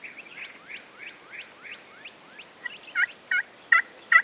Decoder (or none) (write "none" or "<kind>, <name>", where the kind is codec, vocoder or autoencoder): none